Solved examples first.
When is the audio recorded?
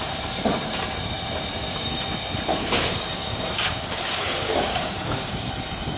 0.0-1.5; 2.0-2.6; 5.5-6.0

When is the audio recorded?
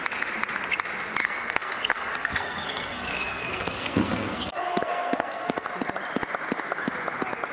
0.0-1.2; 5.7-7.5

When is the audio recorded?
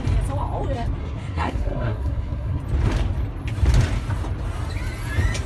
0.0-1.0; 2.6-5.5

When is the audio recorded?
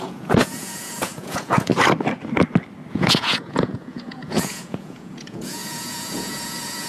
1.7-2.9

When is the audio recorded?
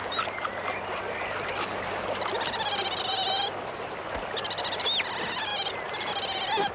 0.0-6.7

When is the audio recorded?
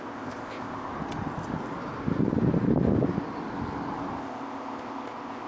0.9-4.2